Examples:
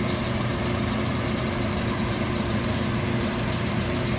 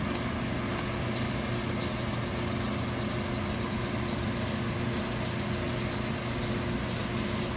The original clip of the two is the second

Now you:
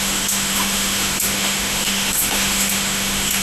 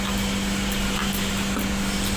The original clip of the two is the second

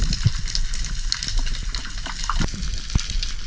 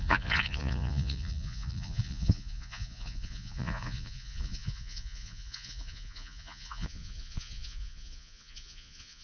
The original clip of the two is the first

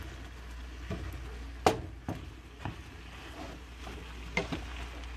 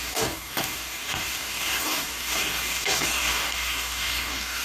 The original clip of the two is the first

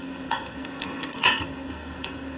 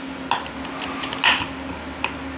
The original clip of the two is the second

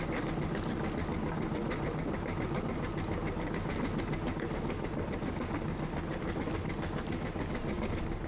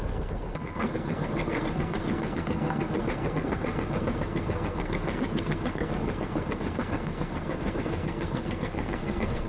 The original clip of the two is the first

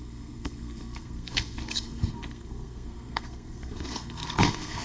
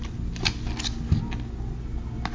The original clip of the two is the second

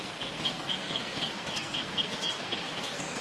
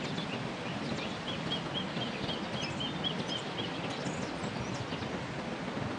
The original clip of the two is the second